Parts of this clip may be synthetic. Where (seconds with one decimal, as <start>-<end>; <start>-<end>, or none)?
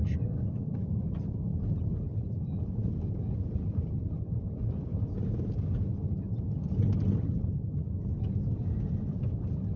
0.0-1.5; 3.5-6.3; 7.0-9.8